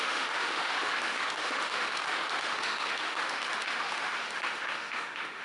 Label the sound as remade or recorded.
remade